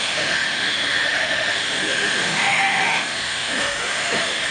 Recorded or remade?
remade